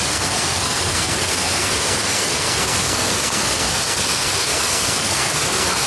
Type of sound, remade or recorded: remade